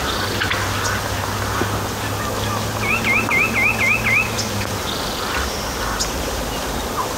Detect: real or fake real